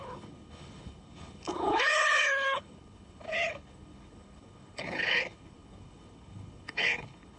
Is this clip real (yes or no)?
no